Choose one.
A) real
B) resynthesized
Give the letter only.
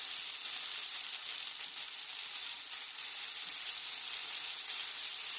A